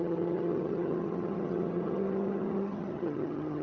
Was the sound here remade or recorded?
remade